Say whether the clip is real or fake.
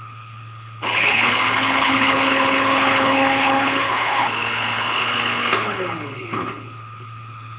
fake